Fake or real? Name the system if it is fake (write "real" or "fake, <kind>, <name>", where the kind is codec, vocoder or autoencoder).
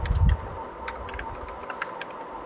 real